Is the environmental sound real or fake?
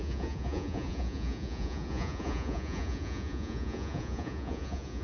fake